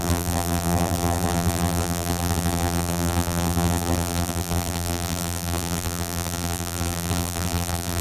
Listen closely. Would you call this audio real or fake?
fake